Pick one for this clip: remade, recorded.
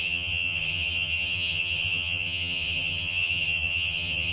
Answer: remade